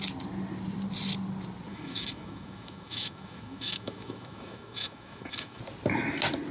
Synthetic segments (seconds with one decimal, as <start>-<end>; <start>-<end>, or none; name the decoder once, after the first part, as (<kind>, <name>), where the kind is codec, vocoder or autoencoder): 1.7-5.6 (autoencoder, DAC-VAE)